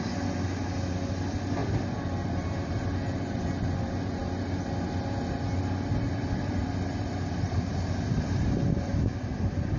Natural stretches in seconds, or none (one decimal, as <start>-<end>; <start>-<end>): 0.0-1.6; 2.7-4.2; 8.9-9.8